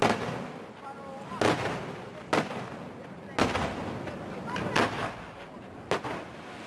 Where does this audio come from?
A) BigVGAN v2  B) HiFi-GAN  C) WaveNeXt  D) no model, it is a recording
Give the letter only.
D